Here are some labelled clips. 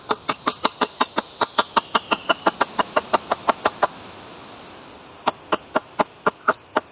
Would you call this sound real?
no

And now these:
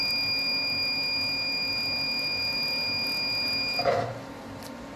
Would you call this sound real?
yes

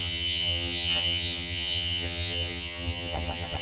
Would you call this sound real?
no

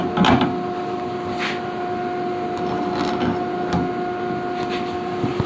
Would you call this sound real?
yes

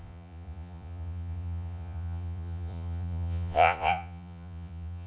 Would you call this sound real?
no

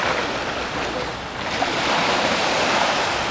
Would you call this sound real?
yes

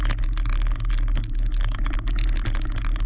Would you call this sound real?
yes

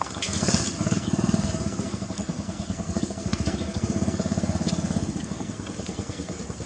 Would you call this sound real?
no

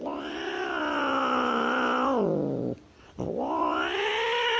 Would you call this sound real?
yes